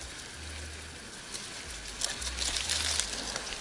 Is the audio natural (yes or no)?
yes